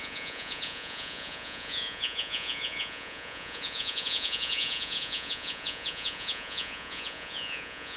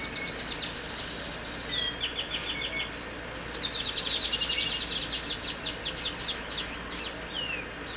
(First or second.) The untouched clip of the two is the second